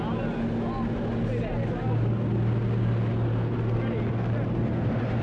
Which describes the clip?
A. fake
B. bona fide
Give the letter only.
B